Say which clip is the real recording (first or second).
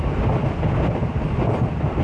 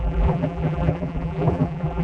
first